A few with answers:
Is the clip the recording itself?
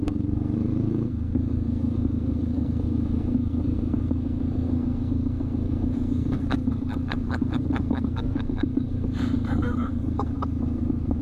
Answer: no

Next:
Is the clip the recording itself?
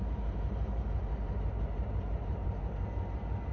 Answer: no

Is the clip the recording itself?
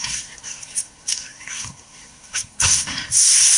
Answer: no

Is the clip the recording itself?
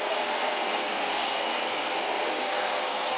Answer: no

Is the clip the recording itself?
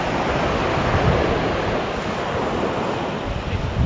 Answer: yes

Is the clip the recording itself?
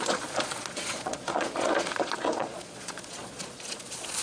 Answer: no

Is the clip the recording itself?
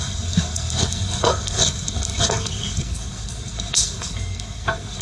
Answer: no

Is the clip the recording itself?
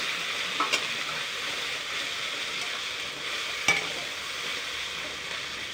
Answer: yes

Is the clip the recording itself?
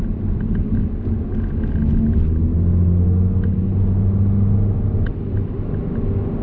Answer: yes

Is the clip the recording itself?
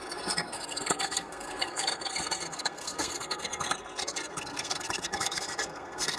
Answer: no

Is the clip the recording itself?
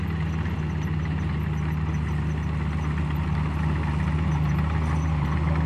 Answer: yes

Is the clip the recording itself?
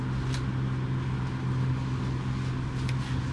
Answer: yes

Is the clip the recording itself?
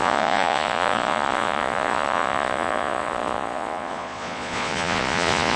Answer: no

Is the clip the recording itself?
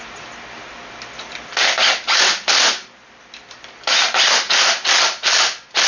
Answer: yes